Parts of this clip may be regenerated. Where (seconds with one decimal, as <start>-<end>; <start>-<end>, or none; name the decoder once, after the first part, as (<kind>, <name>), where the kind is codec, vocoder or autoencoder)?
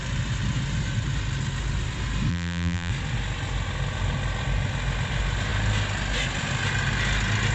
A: 2.3-2.9 (vocoder, BigVGAN v2)